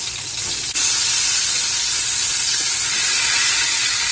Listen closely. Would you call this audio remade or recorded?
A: recorded